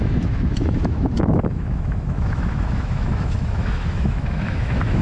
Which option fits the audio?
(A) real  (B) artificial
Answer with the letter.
B